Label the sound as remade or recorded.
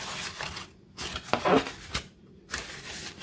recorded